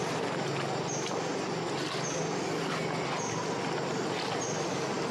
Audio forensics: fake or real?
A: real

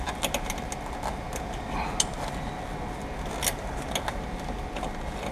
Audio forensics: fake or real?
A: real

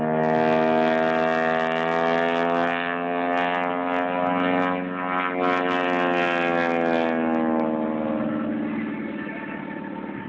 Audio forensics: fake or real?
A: real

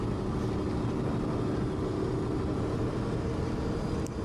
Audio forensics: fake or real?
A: real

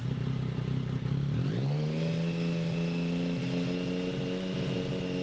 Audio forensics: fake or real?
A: real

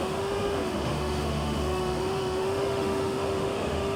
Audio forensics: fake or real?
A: fake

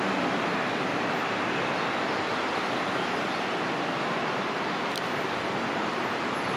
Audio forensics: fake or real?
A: real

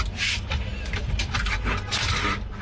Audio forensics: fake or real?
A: real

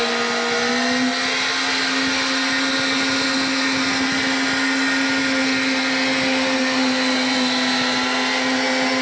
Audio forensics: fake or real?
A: real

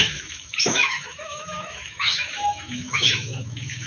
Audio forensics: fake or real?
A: fake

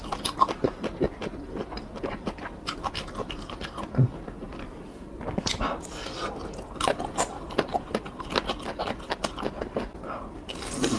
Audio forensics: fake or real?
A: real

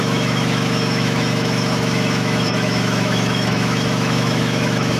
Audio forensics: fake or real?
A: fake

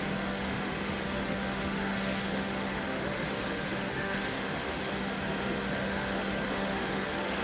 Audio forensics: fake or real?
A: fake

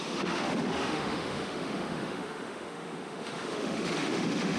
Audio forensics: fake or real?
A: fake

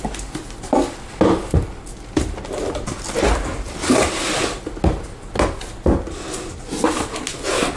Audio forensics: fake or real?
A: real